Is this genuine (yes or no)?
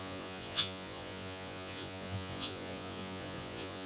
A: no